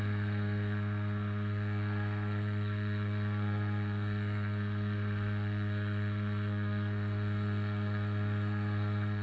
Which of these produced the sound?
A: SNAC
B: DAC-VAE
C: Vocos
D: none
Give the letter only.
A